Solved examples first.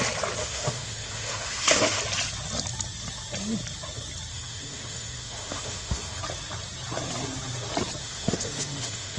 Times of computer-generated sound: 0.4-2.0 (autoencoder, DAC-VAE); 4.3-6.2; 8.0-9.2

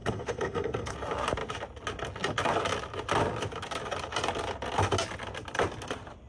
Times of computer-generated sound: 0.0-0.9 (codec, SNAC)

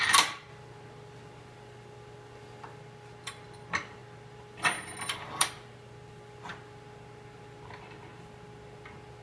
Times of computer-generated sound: none

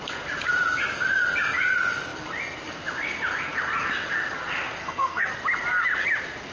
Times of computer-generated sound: 4.8-5.3 (codec, SNAC)

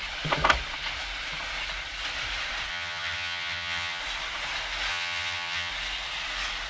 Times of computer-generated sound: 2.7-4.0 (vocoder, HiFi-GAN); 4.9-5.7

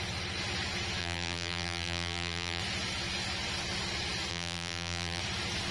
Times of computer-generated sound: 1.0-2.6 (vocoder, BigVGAN v2); 4.3-5.2

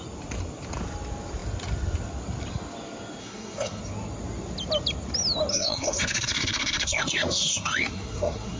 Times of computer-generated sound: 3.2-3.8 (codec, SNAC); 5.5-8.6